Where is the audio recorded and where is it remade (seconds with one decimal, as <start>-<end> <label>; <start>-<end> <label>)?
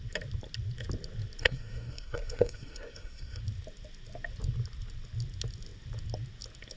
0.0-1.4 recorded; 1.4-3.4 remade; 3.4-6.8 recorded